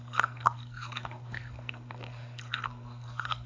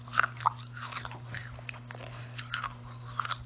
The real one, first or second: second